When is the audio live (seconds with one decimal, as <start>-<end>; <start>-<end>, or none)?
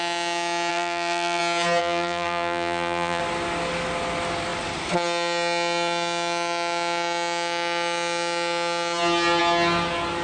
0.0-0.7; 1.4-1.8; 3.2-10.2